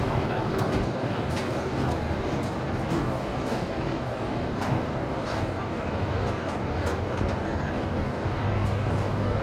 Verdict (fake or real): fake